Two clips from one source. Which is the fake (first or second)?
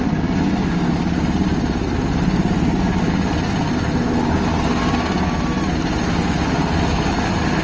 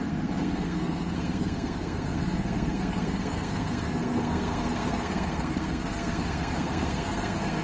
second